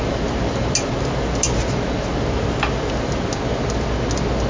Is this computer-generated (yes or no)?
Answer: no